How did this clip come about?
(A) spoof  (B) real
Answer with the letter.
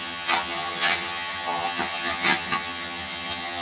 A